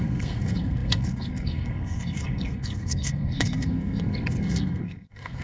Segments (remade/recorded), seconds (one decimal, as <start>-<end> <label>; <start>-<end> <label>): 0.0-5.4 remade